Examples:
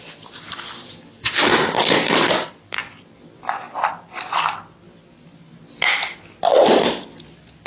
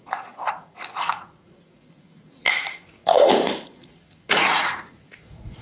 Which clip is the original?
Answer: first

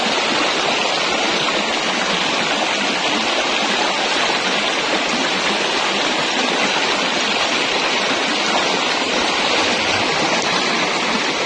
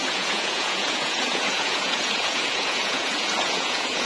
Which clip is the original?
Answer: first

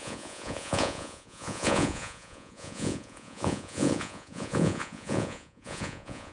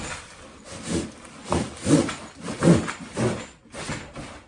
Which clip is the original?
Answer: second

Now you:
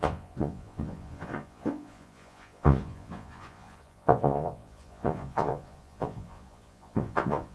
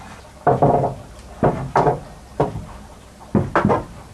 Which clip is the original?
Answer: second